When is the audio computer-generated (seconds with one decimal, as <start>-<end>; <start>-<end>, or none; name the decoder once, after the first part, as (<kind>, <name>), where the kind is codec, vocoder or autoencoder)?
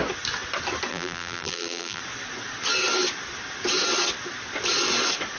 0.9-2.0 (vocoder, BigVGAN v2)